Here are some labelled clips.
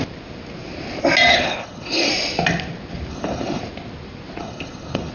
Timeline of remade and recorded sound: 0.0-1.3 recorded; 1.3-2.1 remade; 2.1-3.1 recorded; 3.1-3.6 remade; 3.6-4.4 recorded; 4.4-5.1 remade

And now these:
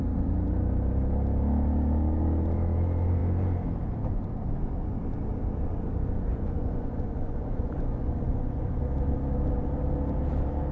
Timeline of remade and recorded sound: 0.0-6.3 recorded; 6.3-8.8 remade; 8.8-10.7 recorded